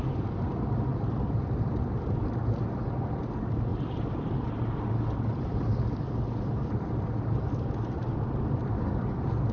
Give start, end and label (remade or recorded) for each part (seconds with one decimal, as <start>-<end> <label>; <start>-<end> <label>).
0.0-9.5 recorded